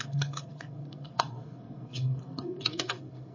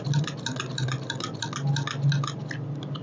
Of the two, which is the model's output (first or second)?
first